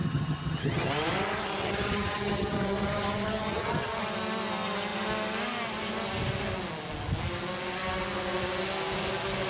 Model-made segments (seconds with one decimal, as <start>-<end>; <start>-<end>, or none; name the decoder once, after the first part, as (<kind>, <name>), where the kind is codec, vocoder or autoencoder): 0.0-0.9 (vocoder, HiFi-GAN); 1.6-4.0